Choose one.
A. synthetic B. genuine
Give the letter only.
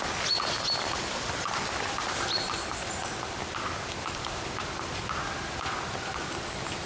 A